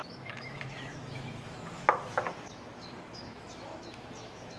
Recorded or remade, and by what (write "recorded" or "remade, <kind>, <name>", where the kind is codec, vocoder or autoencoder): remade, autoencoder, DAC-VAE